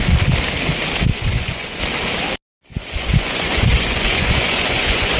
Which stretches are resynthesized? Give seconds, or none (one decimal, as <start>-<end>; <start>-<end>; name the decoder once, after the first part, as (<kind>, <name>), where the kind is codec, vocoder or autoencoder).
1.1-1.8 (vocoder, Vocos); 2.7-5.2